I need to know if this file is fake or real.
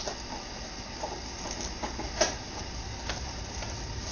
real